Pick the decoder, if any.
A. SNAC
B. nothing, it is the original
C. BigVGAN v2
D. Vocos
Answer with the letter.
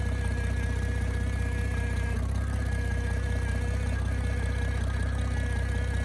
B